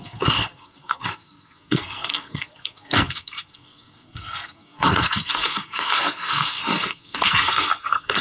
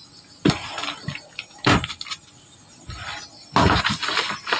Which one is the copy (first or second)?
first